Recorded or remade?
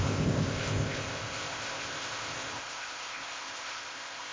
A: remade